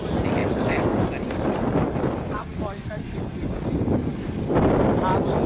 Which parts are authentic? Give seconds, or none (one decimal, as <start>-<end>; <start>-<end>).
0.0-0.4; 1.0-2.5; 3.2-5.5